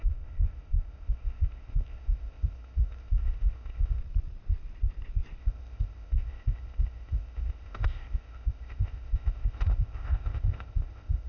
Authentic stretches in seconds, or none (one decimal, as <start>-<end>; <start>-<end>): 4.0-5.4

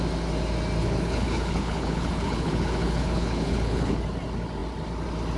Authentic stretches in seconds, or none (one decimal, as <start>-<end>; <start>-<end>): 0.0-0.8; 4.0-5.4

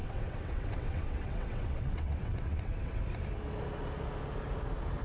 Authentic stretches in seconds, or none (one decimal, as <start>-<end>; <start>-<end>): 3.0-5.0

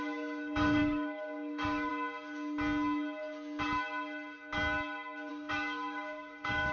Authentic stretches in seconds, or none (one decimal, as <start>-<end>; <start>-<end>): 1.9-5.3

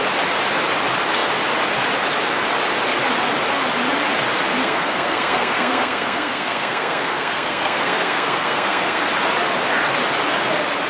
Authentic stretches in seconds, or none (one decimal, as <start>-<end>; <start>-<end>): 0.0-4.6; 9.0-10.9